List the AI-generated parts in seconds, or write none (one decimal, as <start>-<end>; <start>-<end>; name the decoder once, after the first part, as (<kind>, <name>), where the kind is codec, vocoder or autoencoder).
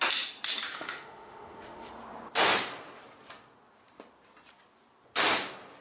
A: 0.7-1.9 (autoencoder, DAC-VAE)